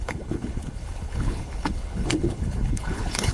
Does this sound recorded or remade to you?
remade